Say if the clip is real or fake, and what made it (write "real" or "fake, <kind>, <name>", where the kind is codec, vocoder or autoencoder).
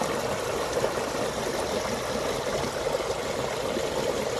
real